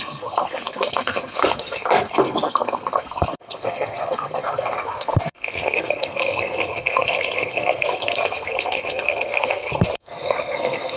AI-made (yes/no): yes